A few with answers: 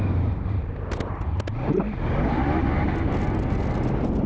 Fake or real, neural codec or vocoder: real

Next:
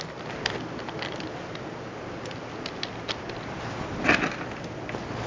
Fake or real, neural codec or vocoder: real